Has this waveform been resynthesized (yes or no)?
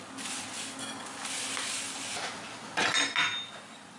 no